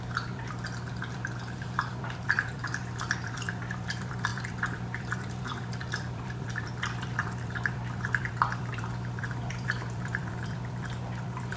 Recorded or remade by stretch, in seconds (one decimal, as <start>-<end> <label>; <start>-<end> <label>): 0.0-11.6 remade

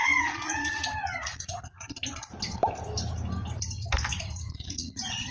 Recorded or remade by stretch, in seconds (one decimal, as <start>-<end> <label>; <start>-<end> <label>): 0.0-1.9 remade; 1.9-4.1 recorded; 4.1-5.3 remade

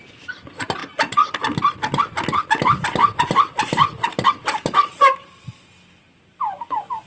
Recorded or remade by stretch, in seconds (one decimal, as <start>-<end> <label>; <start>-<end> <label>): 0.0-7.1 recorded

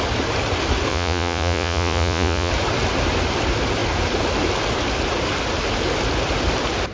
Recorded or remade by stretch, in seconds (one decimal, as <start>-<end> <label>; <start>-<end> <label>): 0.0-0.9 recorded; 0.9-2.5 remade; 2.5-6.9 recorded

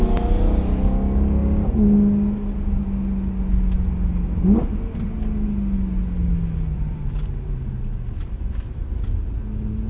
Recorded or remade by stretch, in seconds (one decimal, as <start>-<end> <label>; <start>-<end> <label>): 0.0-6.7 recorded; 6.7-8.5 remade; 8.5-9.9 recorded